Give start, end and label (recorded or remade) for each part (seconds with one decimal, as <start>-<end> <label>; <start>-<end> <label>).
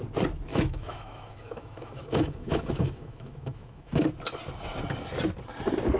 0.0-0.5 recorded; 0.5-4.1 remade; 4.1-6.0 recorded